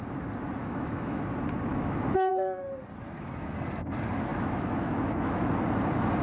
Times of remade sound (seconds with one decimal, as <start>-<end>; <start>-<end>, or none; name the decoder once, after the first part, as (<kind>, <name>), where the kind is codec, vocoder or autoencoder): 0.6-1.2 (autoencoder, DAC-VAE); 1.7-2.3; 4.3-5.5